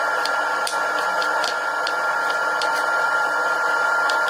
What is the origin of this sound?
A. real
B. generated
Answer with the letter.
A